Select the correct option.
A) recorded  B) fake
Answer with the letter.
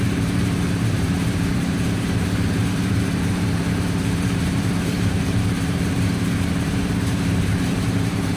B